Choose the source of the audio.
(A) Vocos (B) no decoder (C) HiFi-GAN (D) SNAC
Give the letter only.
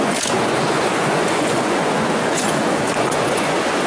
A